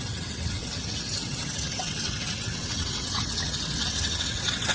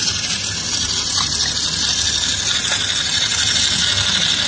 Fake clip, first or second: first